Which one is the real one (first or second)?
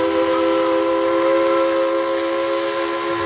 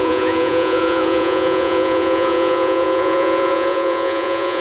first